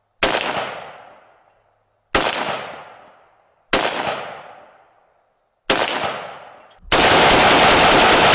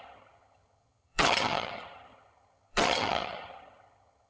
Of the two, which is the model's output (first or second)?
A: second